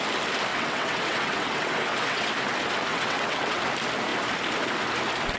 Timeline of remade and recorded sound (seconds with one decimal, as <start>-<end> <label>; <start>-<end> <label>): 0.0-0.5 recorded; 0.5-2.3 remade; 2.3-2.9 recorded; 2.9-3.6 remade; 3.6-5.4 recorded